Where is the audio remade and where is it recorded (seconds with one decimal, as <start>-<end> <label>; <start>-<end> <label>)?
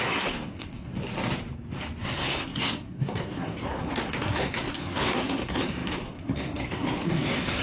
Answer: 0.0-0.9 remade; 0.9-2.0 recorded; 2.0-7.6 remade